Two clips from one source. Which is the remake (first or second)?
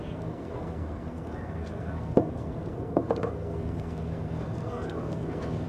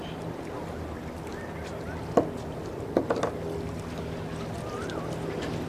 first